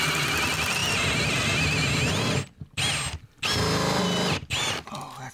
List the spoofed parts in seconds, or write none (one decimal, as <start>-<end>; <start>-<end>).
none